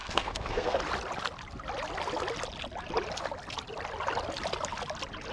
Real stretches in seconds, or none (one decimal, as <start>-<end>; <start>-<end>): 0.8-5.3